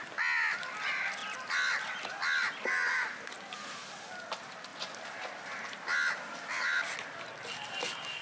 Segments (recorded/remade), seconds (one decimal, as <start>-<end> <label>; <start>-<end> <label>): 0.0-8.2 recorded